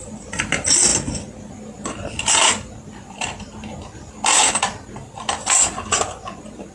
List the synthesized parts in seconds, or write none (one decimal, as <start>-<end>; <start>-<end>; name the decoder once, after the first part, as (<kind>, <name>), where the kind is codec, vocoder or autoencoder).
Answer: none